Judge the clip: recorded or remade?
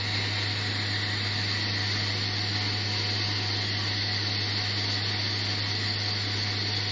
recorded